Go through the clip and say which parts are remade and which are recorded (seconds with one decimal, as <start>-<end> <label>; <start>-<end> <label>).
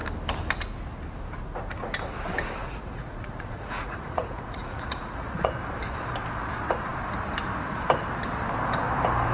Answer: 0.0-2.6 recorded; 2.6-5.5 remade; 5.5-9.3 recorded